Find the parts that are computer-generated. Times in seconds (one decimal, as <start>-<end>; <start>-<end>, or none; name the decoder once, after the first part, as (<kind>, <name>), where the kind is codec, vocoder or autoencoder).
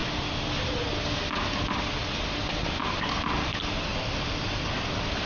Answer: 3.9-5.3 (vocoder, BigVGAN v2)